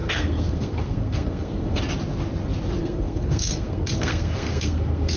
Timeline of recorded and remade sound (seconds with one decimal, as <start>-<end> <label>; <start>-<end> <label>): 0.0-1.8 remade; 1.8-2.8 recorded; 2.8-5.2 remade

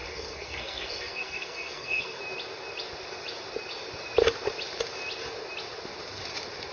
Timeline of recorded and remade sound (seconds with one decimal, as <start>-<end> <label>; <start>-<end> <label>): 0.0-2.2 remade; 2.2-6.7 recorded